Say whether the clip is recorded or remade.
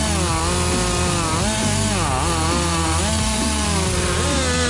recorded